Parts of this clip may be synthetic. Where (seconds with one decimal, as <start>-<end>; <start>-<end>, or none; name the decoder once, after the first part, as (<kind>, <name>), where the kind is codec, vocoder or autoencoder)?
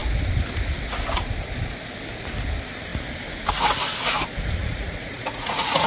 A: 4.6-5.9 (vocoder, Vocos)